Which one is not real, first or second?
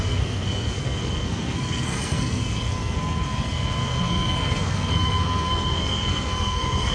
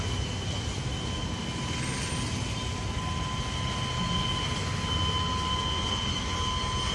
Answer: first